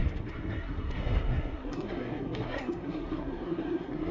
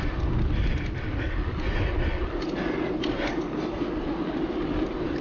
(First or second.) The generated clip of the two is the first